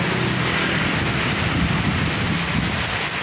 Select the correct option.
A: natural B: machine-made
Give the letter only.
A